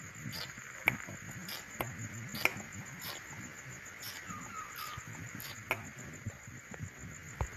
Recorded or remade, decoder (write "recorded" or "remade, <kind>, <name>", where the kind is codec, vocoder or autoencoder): recorded